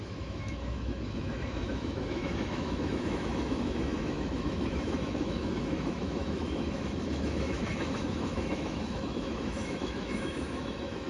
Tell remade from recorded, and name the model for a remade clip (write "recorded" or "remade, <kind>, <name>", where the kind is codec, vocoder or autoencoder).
remade, autoencoder, DAC-VAE